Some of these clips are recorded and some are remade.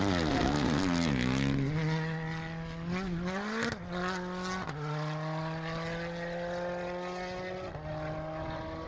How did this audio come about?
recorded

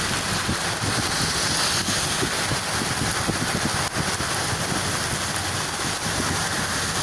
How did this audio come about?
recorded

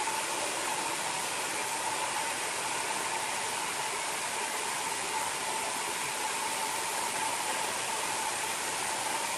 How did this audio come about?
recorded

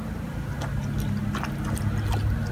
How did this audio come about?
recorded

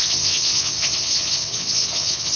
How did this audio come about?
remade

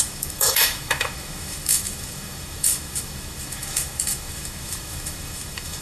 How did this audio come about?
remade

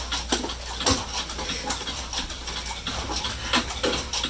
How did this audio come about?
recorded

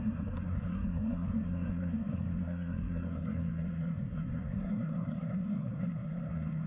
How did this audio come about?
remade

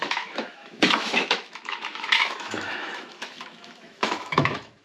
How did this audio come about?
remade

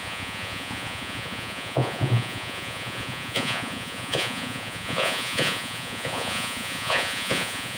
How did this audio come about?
remade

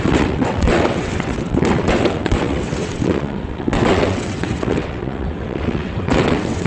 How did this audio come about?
remade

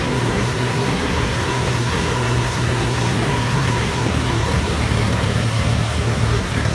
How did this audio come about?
remade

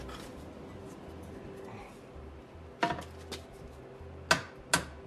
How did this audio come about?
recorded